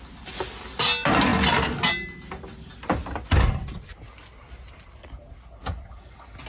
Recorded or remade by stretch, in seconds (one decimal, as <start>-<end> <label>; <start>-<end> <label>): 0.0-6.5 recorded